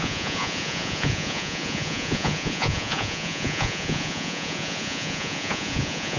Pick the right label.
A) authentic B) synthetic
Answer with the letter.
B